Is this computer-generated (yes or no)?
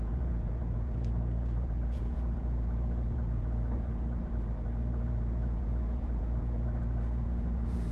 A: yes